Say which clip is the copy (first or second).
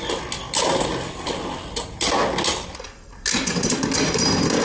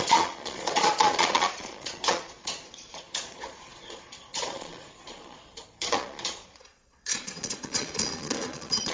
second